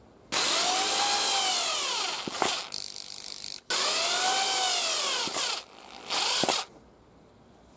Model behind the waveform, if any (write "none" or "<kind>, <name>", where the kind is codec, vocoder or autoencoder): none